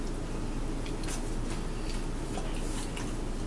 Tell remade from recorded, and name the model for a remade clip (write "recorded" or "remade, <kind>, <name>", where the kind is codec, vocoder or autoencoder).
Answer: recorded